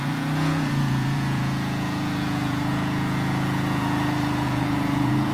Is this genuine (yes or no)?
no